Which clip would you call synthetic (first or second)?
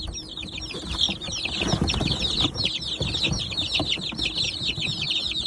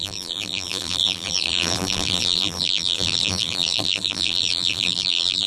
second